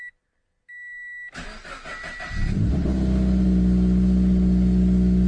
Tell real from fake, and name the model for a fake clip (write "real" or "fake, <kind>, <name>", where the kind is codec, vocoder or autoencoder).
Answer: real